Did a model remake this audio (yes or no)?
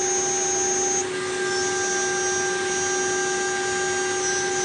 no